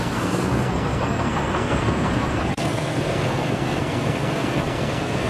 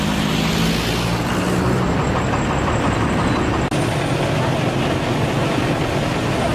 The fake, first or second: first